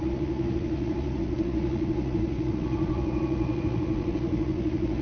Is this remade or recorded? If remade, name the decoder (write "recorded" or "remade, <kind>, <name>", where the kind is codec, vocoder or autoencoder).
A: remade, vocoder, Vocos